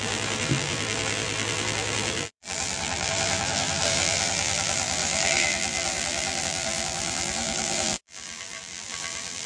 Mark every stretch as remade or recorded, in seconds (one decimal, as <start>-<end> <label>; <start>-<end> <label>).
0.0-9.5 remade